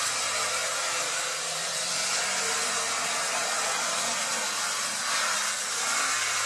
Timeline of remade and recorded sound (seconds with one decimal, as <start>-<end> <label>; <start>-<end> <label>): 0.0-0.6 recorded; 0.6-1.9 remade; 1.9-6.5 recorded